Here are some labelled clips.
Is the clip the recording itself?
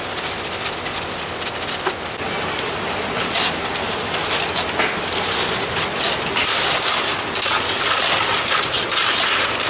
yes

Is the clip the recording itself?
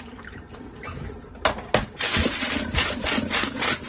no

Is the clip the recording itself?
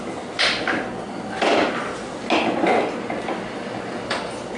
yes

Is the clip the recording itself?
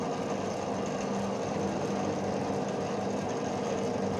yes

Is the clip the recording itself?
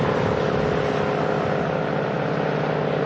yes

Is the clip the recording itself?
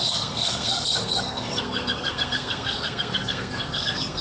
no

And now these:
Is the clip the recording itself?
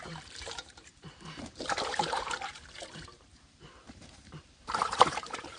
no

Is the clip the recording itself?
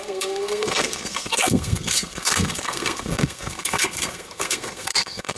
no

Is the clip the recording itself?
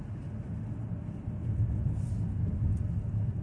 yes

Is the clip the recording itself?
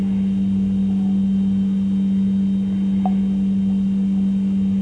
yes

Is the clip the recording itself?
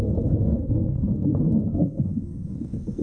no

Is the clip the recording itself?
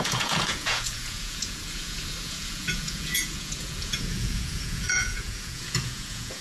no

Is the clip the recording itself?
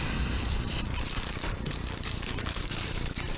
no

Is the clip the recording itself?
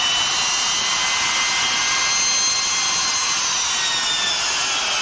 yes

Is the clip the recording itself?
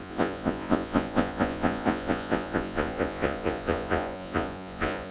no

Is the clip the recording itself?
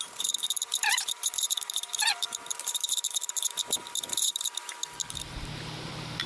no